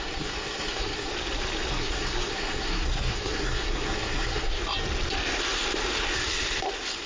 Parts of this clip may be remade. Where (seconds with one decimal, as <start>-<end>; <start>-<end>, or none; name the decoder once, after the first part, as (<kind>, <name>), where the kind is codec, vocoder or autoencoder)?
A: 0.0-1.1 (codec, SNAC); 1.7-4.6